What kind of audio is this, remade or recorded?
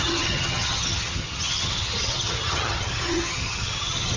remade